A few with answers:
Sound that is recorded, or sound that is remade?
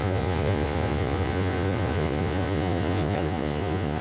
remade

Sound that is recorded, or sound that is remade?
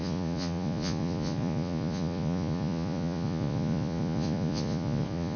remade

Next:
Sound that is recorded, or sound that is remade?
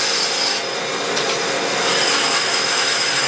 recorded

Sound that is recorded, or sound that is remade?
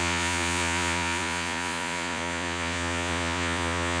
remade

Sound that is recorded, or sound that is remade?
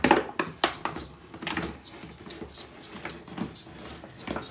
recorded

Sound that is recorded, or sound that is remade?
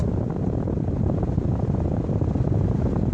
recorded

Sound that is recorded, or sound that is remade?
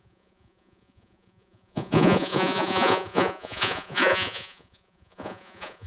remade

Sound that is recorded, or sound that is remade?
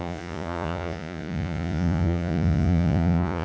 remade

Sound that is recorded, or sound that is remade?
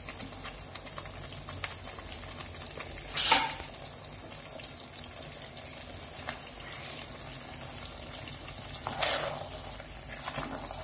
recorded